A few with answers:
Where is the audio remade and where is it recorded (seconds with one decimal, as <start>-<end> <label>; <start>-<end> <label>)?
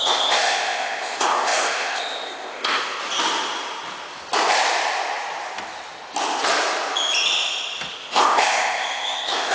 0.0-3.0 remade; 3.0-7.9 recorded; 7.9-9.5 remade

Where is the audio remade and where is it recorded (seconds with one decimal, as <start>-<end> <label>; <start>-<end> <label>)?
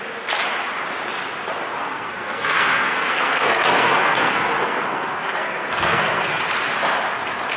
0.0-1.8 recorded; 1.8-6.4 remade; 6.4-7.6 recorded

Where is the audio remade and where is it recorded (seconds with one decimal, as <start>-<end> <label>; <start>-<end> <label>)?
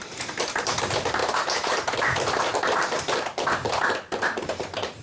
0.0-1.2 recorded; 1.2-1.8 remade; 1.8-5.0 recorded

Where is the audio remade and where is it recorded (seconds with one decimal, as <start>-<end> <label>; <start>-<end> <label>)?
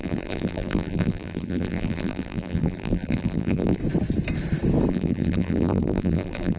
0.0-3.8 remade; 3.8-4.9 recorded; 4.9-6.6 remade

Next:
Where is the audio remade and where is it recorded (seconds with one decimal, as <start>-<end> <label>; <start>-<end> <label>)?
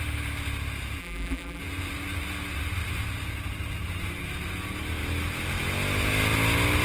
0.0-1.0 recorded; 1.0-1.6 remade; 1.6-6.8 recorded